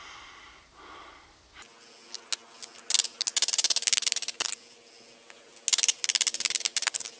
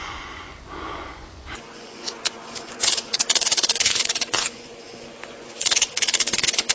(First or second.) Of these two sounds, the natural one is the first